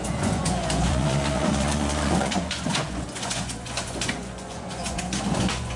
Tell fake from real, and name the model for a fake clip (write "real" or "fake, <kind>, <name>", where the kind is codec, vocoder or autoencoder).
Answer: fake, vocoder, Vocos